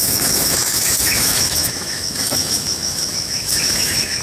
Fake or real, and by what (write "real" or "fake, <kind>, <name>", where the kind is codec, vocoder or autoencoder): fake, autoencoder, DAC-VAE